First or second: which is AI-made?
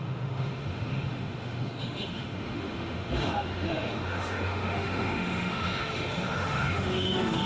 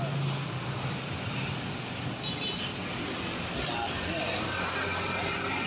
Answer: first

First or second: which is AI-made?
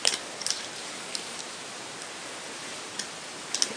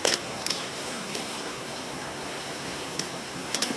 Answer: second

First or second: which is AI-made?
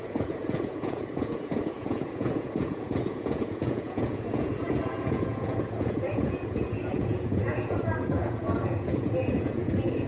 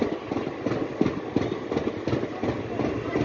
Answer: first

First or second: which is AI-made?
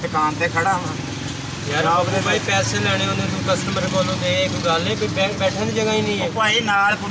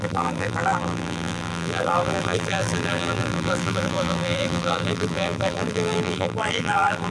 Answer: second